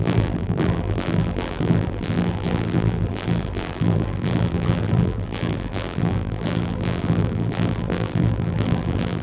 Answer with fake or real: fake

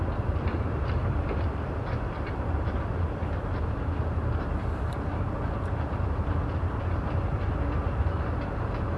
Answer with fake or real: fake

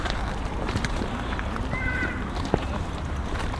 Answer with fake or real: fake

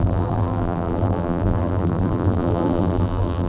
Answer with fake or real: fake